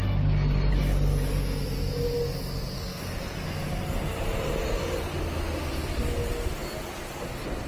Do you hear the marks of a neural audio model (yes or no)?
no